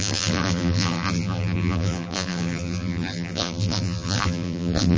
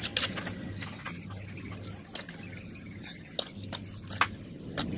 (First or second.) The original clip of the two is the second